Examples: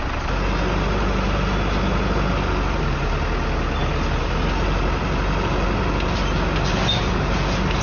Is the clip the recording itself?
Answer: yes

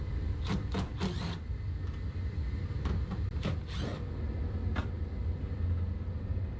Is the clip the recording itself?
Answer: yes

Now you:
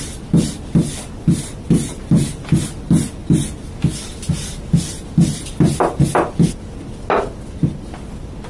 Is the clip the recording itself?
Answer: yes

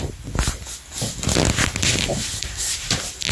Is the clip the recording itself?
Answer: yes